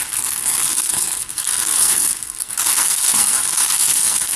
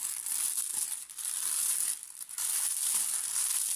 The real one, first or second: second